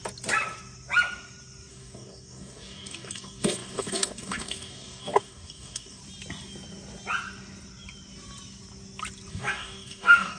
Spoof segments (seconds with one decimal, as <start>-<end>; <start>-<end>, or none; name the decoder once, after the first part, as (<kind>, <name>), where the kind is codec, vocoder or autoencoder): 1.7-6.0 (codec, DAC); 9.3-10.4